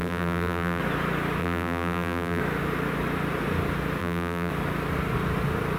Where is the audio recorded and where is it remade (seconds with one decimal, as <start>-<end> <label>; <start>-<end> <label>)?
0.0-0.8 remade; 0.8-1.4 recorded; 1.4-2.4 remade; 2.4-4.0 recorded; 4.0-4.5 remade; 4.5-5.8 recorded